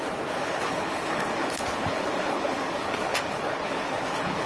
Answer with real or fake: fake